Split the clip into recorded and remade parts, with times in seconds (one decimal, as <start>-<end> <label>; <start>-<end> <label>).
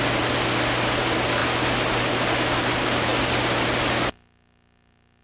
0.0-5.2 recorded